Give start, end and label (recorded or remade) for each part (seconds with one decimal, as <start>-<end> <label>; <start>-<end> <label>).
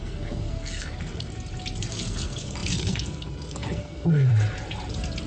0.0-1.3 remade; 1.3-1.8 recorded; 1.8-4.3 remade; 4.3-5.3 recorded